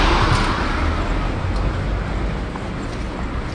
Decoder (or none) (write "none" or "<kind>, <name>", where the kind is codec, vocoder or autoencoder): none